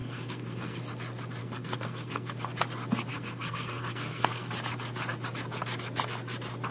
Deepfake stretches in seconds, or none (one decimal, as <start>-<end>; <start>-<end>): 0.0-0.8; 1.4-2.3; 3.1-4.5